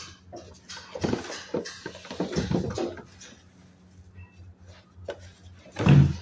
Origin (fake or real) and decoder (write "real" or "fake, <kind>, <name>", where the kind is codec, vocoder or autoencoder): real